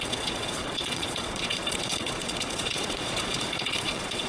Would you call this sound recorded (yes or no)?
no